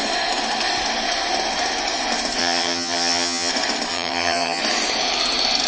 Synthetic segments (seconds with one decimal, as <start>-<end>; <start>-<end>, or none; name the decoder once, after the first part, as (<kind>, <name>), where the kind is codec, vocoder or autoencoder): 2.4-3.5 (vocoder, HiFi-GAN); 3.9-4.6